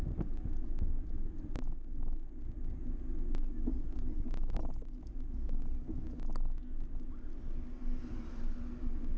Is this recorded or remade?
recorded